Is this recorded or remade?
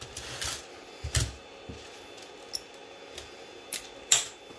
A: recorded